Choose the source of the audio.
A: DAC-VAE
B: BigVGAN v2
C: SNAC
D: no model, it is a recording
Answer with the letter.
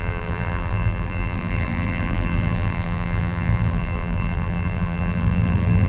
B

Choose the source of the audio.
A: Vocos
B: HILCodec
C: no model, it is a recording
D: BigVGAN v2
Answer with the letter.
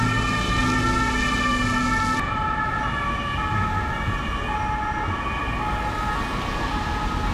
C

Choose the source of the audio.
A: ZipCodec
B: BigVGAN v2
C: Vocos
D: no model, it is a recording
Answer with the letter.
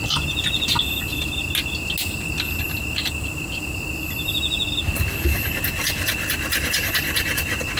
D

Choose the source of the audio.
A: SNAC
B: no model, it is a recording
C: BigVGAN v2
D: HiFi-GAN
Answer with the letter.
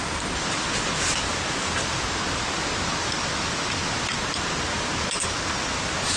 B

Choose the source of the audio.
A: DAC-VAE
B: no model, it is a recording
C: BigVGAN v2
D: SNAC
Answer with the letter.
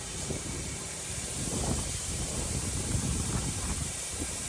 C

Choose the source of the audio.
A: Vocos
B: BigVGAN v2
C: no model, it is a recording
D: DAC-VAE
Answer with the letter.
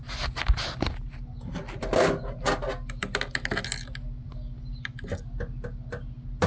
C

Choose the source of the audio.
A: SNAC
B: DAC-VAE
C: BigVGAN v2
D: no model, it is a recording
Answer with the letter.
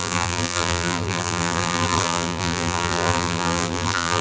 C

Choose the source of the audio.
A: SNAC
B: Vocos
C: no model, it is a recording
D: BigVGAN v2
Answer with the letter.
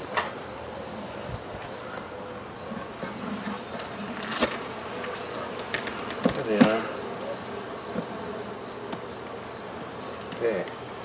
C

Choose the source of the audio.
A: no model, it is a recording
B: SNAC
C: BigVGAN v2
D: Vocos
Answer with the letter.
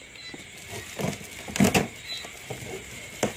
A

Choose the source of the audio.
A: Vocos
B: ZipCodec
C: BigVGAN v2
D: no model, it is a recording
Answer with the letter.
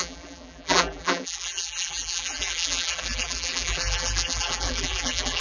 C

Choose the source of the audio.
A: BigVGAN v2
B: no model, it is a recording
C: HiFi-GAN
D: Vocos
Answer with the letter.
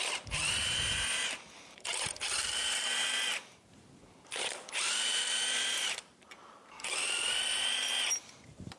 A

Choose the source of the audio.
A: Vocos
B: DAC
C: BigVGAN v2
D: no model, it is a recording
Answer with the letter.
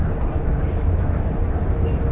D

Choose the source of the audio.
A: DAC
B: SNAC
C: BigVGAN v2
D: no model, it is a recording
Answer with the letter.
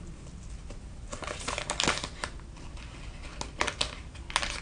D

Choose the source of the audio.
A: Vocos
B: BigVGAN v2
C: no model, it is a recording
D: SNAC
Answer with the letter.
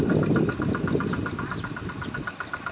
C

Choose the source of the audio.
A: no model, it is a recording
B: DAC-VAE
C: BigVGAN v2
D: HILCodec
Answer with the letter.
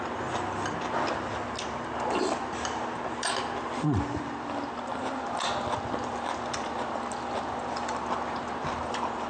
A